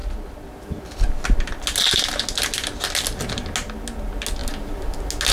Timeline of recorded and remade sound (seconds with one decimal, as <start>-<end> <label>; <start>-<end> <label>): 0.0-5.3 recorded